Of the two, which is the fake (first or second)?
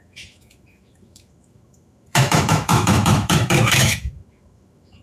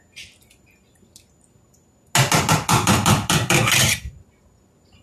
first